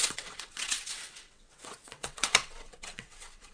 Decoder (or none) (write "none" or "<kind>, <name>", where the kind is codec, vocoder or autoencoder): vocoder, WaveNeXt